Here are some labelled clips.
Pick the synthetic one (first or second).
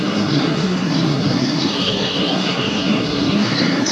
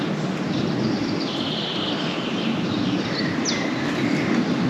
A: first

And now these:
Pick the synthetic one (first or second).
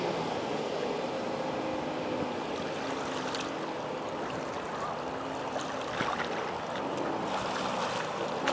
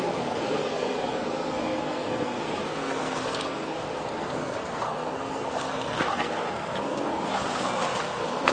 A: second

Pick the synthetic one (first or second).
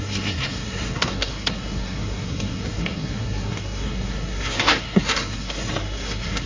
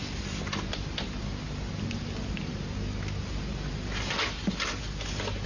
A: first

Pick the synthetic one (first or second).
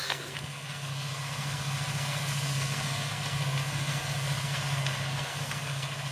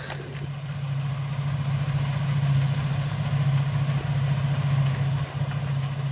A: first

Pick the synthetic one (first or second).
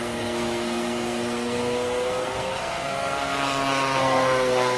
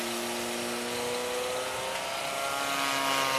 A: first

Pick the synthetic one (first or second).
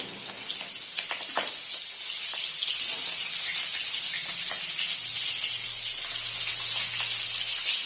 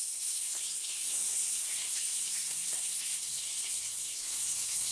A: second